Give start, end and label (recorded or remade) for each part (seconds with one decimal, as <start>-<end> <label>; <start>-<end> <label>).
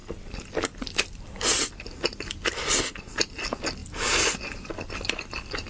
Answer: 0.0-5.7 recorded